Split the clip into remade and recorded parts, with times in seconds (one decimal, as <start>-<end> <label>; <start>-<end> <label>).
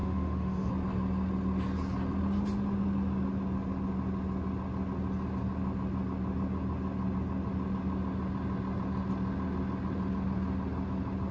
0.0-0.7 remade; 0.7-11.3 recorded